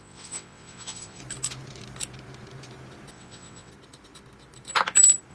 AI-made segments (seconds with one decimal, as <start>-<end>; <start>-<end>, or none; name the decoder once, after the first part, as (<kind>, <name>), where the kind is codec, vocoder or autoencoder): 0.0-1.2 (vocoder, WaveNeXt); 3.1-3.7